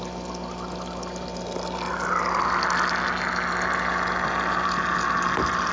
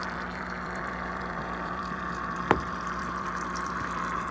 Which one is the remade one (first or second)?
second